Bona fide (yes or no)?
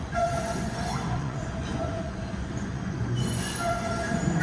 no